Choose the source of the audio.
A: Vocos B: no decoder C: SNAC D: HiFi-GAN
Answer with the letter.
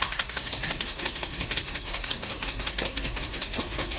C